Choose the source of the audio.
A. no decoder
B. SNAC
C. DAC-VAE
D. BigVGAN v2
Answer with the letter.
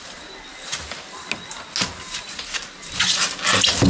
A